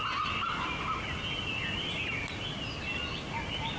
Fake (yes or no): no